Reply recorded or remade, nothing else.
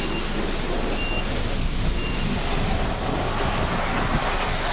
recorded